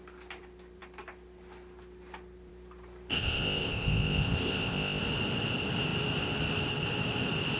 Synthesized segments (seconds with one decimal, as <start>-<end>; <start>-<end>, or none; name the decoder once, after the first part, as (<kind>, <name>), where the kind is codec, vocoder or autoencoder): 3.1-5.0 (codec, ZipCodec)